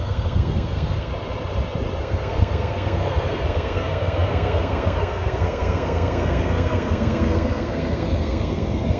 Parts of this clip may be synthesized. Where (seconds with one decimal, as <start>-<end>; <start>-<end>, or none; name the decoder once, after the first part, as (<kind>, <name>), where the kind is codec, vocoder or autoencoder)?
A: 0.0-1.1 (codec, SNAC); 2.0-9.0